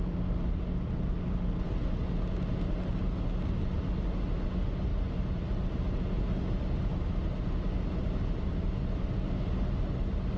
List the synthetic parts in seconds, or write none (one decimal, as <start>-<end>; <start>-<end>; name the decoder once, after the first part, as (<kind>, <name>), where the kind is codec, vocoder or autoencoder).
none